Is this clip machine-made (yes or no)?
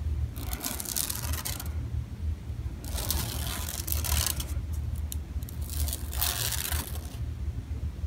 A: no